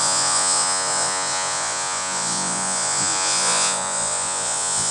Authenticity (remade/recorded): remade